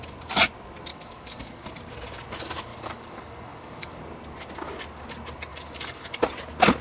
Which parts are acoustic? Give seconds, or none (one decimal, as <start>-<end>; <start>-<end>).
0.0-0.9; 1.8-2.7; 4.0-5.5; 6.2-6.8